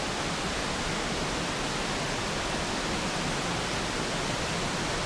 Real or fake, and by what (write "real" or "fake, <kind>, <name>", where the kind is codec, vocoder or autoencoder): real